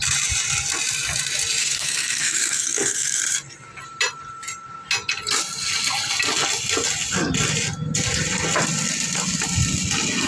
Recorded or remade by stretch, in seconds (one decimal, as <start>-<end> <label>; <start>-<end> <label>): 0.0-1.6 recorded; 1.6-3.2 remade; 3.2-10.3 recorded